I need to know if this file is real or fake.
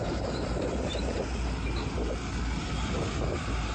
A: real